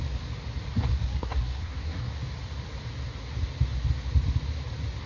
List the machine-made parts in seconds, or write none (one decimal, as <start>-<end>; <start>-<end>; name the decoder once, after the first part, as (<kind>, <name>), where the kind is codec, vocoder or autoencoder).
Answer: 0.9-2.1 (codec, SNAC)